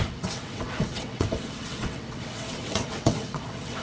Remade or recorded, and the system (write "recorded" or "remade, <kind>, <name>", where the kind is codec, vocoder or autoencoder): remade, vocoder, WaveNeXt